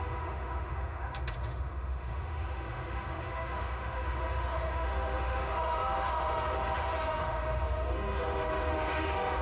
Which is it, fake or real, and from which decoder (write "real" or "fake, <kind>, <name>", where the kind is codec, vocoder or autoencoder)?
fake, autoencoder, DAC-VAE